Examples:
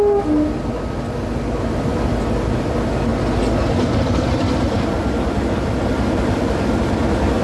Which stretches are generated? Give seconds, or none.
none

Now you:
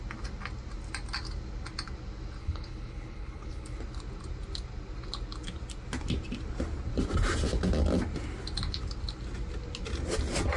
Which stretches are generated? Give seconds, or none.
2.4-3.8 (codec, HILCodec)

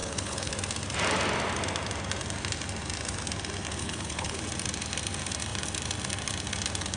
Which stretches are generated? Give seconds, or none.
0.0-0.5 (codec, HILCodec); 3.8-4.4